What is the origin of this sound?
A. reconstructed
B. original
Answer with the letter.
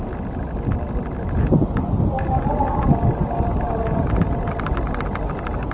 B